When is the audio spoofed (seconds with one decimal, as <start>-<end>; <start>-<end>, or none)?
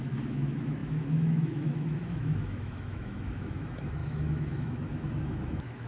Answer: 0.0-5.9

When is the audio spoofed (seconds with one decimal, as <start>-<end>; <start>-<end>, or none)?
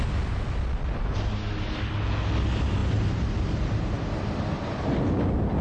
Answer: none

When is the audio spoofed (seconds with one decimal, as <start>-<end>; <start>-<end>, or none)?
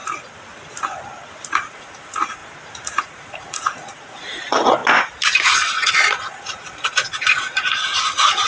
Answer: 1.7-2.4; 3.0-4.8; 5.3-8.5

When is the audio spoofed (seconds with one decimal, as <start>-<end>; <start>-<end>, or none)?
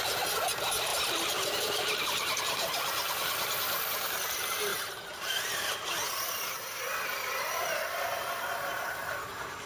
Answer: 0.9-2.4; 4.7-5.9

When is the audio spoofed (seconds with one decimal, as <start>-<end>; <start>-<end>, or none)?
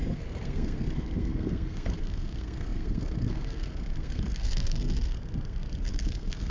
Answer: 0.0-6.5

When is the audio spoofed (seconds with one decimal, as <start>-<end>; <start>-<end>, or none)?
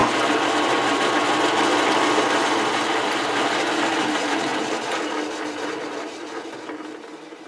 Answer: 0.0-3.4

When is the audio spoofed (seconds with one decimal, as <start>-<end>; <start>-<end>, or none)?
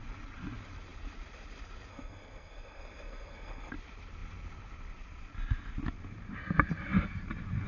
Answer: 1.9-3.7